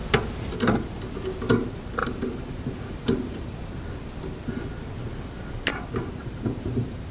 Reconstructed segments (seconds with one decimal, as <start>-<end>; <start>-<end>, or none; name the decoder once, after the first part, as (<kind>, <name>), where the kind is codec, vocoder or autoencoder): 2.0-3.7 (vocoder, BigVGAN v2); 5.7-7.1